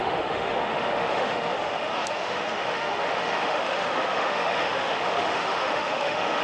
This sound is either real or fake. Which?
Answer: fake